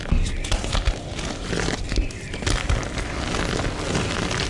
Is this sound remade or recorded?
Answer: recorded